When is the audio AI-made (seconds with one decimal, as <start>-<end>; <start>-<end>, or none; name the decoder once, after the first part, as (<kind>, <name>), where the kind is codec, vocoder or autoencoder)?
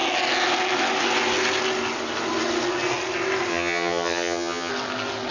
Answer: 3.5-4.7 (vocoder, HiFi-GAN)